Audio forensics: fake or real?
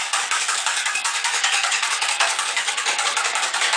fake